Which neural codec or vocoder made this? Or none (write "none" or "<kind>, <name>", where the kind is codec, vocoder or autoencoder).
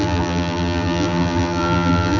vocoder, BigVGAN v2